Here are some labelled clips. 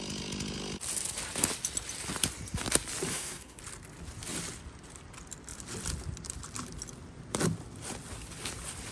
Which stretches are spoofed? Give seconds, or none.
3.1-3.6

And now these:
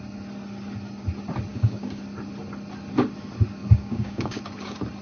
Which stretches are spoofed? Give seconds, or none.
1.5-2.0; 3.6-4.4

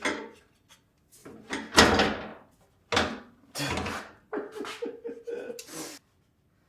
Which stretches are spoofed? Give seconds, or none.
none